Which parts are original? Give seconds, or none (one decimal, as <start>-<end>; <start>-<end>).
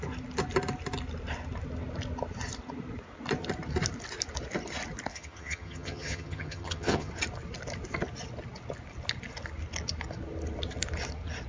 0.0-5.1; 7.1-11.5